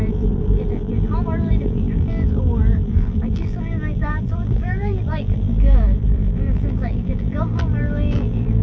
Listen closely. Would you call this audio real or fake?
fake